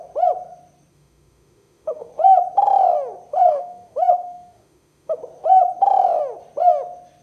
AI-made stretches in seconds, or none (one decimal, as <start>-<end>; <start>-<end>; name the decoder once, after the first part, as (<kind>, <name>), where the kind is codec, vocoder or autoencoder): 0.9-2.1 (autoencoder, DAC-VAE); 3.3-5.2